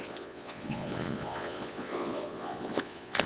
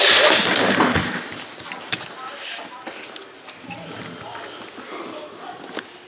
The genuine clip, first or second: second